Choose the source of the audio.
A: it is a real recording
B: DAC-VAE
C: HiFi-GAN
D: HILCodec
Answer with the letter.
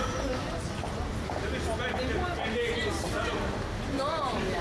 A